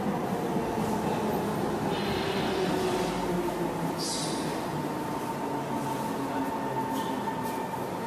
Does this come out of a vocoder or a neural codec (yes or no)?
no